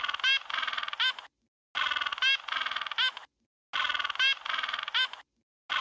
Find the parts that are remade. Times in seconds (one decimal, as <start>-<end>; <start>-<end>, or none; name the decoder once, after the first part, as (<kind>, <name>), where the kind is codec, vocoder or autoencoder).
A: none